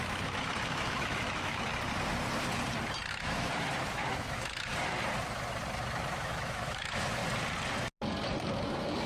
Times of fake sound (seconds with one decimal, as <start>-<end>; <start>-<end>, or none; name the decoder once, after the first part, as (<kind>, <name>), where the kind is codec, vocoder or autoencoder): 0.0-1.7 (autoencoder, DAC-VAE); 3.1-4.7; 6.1-7.2; 8.6-9.1